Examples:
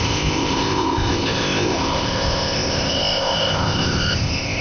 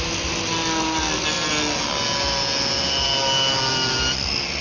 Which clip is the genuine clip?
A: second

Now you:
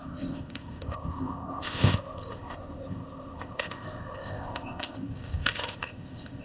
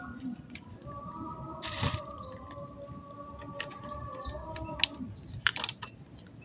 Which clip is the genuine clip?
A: second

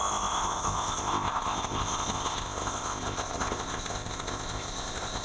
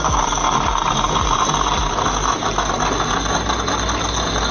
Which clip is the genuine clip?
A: second